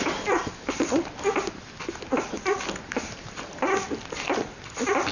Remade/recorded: recorded